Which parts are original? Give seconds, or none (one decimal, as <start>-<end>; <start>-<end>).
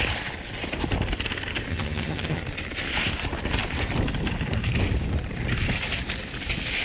0.0-1.7; 2.4-6.8